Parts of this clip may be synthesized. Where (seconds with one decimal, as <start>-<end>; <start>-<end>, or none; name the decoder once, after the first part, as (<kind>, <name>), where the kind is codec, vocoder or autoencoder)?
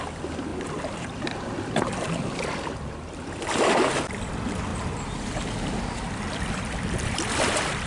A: 0.0-7.9 (vocoder, BigVGAN v2)